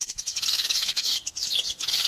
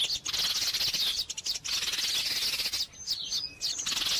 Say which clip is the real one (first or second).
second